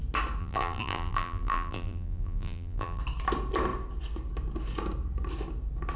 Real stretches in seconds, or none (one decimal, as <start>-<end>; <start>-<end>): 0.0-0.4; 3.0-6.0